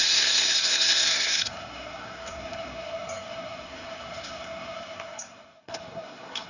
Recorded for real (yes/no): no